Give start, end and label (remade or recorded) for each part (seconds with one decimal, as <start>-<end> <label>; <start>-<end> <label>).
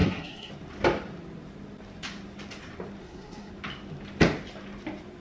0.0-0.5 remade; 0.5-3.0 recorded; 3.0-3.5 remade; 3.5-5.2 recorded